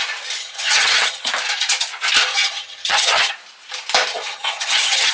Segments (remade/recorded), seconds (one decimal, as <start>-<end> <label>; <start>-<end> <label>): 0.0-0.4 recorded; 0.4-1.3 remade; 1.3-2.3 recorded; 2.3-3.3 remade; 3.3-4.1 recorded; 4.1-5.1 remade